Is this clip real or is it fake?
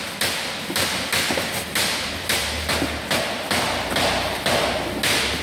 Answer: real